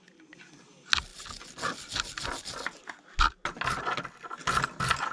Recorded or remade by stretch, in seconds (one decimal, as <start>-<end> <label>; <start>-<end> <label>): 0.0-5.1 recorded